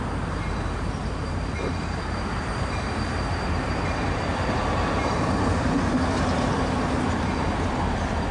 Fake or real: fake